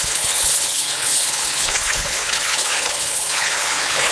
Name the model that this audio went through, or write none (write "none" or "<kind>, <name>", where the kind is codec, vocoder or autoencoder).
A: codec, HILCodec